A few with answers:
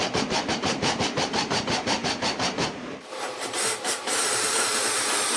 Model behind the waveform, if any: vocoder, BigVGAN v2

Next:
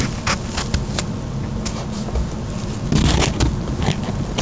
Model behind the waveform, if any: none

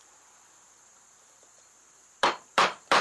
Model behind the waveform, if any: vocoder, BigVGAN v2